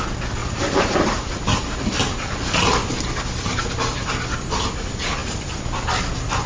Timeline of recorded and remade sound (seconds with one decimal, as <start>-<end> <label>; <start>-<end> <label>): 0.0-0.4 recorded; 0.4-1.4 remade; 1.4-6.5 recorded